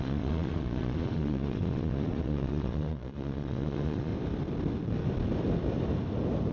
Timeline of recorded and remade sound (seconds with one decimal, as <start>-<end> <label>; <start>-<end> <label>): 0.0-4.1 remade; 4.1-6.5 recorded